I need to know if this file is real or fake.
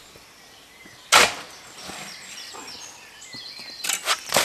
real